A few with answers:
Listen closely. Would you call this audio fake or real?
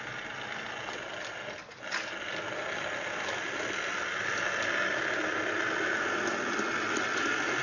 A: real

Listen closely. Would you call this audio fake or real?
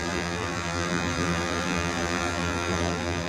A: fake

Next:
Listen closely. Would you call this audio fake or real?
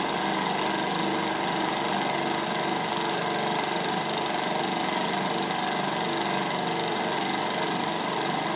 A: real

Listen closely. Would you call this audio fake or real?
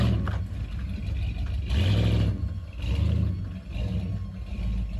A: real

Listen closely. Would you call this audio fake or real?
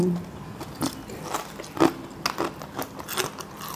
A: real